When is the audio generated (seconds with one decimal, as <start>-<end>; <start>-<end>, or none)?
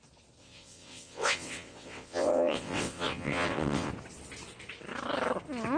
0.4-3.9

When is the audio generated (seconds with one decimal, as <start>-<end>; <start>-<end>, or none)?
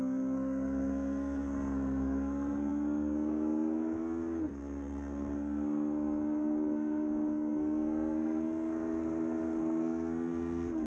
0.0-10.9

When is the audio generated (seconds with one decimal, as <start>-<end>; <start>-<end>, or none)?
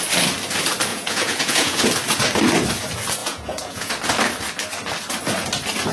0.9-1.8; 3.2-3.9